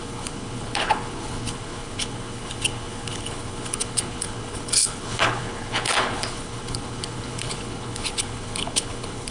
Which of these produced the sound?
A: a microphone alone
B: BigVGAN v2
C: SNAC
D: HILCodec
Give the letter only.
D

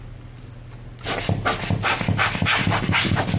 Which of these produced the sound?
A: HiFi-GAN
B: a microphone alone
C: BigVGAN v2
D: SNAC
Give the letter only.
B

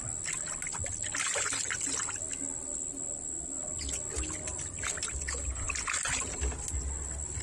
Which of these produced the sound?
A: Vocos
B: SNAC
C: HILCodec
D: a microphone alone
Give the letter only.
D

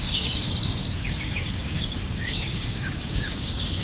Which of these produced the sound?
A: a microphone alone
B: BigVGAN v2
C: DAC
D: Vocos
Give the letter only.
C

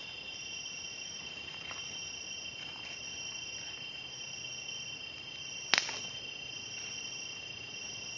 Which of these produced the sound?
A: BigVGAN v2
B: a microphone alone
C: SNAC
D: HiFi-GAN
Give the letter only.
B